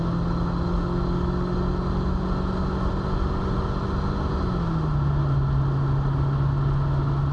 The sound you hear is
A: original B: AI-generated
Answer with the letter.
A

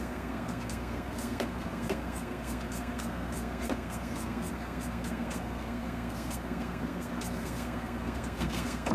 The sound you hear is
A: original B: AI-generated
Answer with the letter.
B